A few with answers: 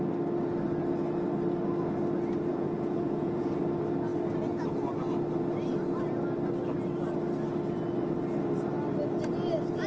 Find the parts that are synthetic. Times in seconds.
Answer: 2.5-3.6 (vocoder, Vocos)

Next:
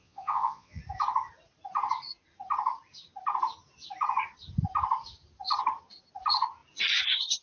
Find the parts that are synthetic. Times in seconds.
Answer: 0.0-0.8 (vocoder, Vocos)

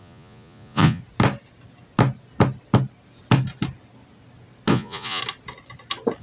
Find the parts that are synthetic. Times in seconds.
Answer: 0.0-1.0 (vocoder, Vocos); 4.7-5.2

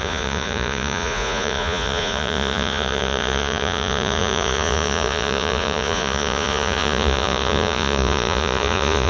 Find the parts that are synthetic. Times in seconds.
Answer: 0.0-9.1 (vocoder, Vocos)

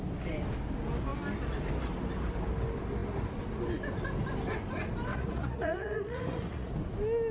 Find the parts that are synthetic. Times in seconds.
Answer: 5.1-6.7 (vocoder, Vocos)

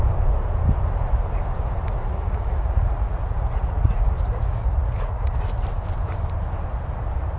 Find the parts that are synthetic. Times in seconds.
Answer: 2.0-5.4 (vocoder, Vocos)